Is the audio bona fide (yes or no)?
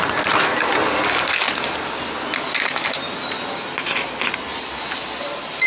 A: yes